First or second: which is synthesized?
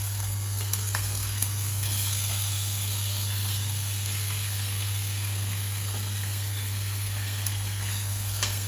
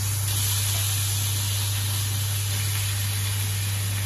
first